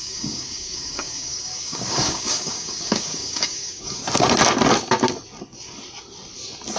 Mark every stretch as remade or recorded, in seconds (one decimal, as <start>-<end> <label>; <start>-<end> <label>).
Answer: 0.0-4.0 remade; 4.0-6.8 recorded